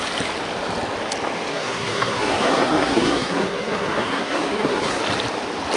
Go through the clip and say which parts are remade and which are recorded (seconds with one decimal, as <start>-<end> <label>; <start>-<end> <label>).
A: 0.0-1.5 recorded; 1.5-5.0 remade; 5.0-5.8 recorded